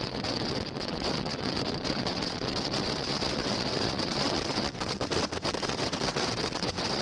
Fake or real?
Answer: fake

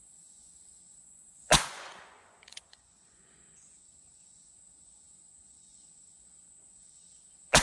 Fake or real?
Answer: fake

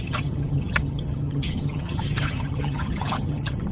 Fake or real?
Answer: fake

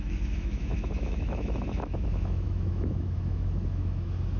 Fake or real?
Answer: fake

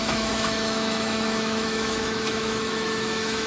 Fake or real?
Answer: fake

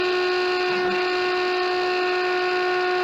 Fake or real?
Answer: real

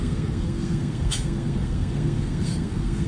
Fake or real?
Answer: fake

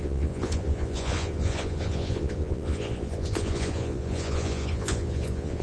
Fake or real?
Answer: fake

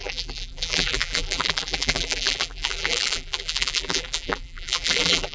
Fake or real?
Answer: fake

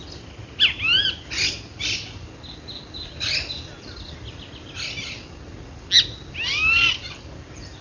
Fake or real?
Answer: real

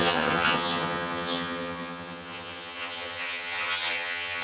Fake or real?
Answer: fake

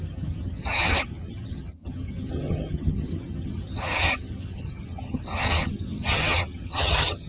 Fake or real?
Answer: fake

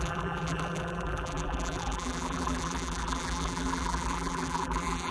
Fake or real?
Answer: fake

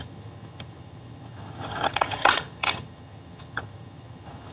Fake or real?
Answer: fake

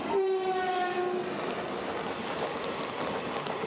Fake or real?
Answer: real